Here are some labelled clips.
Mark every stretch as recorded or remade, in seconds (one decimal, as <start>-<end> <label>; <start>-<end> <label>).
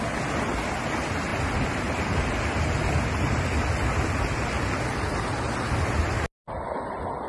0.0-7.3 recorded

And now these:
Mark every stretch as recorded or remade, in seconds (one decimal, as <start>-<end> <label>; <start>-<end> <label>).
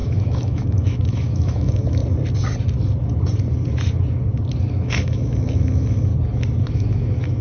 0.0-2.0 remade; 2.0-4.7 recorded; 4.7-6.1 remade; 6.1-6.7 recorded; 6.7-7.4 remade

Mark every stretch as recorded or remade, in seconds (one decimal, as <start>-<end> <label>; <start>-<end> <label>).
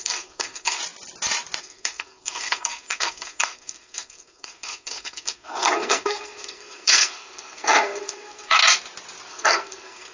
0.0-0.8 remade; 0.8-1.6 recorded; 1.6-8.6 remade; 8.6-9.3 recorded; 9.3-10.1 remade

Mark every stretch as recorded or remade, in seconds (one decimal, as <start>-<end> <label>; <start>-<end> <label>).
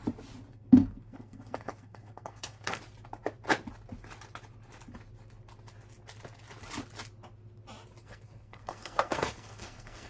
0.0-0.5 recorded; 0.5-2.8 remade; 2.8-8.0 recorded; 8.0-10.1 remade